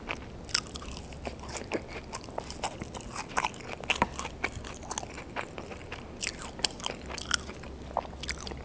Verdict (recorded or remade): recorded